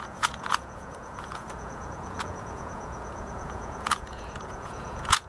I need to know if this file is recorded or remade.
remade